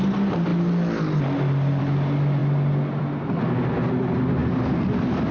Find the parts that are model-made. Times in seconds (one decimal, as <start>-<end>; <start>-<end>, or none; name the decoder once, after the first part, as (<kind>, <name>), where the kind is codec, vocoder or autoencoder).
none